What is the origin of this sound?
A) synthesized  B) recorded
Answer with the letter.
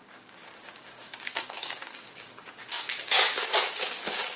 A